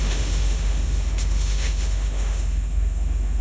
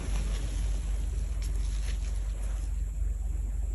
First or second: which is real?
second